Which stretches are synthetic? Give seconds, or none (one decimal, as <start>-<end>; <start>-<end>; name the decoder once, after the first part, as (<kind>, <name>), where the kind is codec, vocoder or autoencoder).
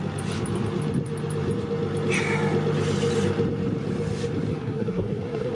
4.5-5.5 (codec, SNAC)